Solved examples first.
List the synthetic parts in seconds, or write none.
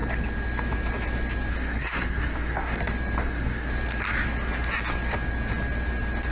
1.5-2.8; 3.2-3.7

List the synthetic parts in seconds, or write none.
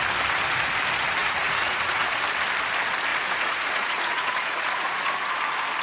1.2-2.2; 3.1-5.3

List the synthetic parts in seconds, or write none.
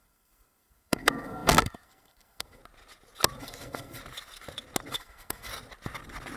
0.0-2.6; 3.4-4.0; 4.9-5.5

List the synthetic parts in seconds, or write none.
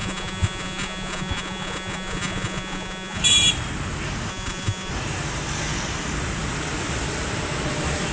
0.0-3.2; 4.3-4.9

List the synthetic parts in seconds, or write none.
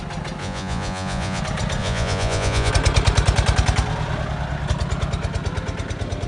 0.4-1.4; 1.8-2.7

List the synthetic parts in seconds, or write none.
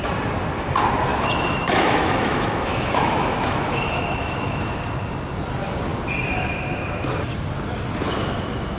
1.1-4.6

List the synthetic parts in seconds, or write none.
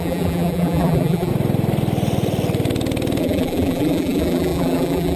0.0-1.3; 3.2-5.2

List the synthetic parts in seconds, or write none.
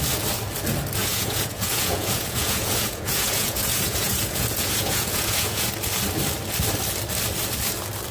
1.0-5.7